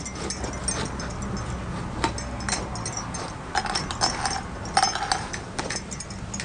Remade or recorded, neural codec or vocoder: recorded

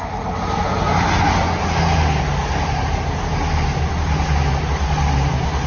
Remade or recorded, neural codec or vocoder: recorded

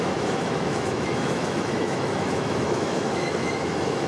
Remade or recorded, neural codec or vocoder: remade, autoencoder, DAC-VAE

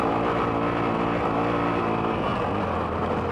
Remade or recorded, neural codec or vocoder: recorded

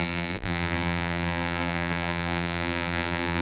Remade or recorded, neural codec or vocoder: remade, vocoder, BigVGAN v2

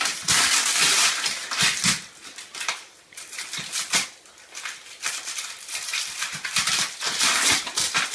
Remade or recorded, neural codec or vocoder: remade, vocoder, BigVGAN v2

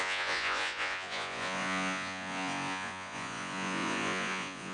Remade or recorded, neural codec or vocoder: remade, vocoder, Vocos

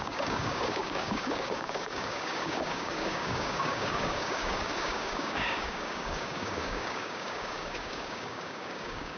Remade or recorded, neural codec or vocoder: remade, codec, DAC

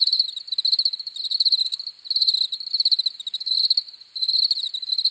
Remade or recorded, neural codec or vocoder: recorded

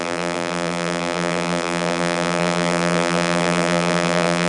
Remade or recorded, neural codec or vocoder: remade, vocoder, BigVGAN v2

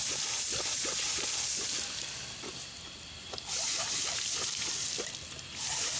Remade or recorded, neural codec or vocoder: recorded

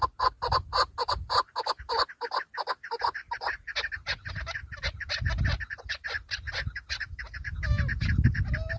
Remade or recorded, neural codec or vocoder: recorded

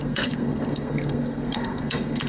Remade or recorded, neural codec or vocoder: remade, codec, SNAC